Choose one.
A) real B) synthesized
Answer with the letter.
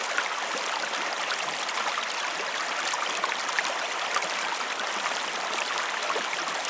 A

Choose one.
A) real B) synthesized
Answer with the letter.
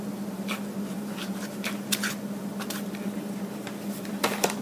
B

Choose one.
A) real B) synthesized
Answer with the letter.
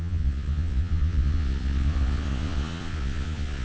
B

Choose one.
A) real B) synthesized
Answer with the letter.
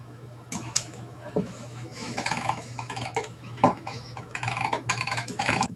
B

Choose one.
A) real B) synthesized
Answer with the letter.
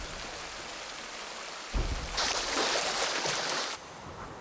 A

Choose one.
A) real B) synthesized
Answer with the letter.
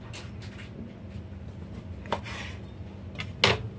A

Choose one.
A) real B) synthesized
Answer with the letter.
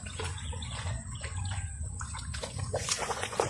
B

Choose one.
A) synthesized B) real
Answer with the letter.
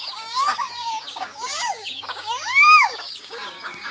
A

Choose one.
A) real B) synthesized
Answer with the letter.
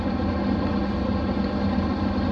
A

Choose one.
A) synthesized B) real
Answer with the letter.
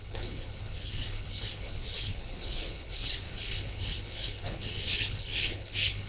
A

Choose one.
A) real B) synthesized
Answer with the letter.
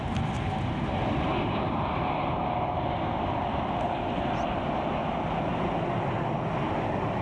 A